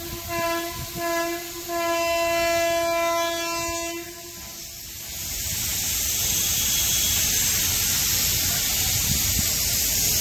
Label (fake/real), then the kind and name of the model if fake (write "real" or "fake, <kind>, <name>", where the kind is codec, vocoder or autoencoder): real